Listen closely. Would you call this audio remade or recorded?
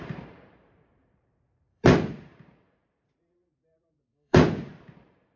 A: remade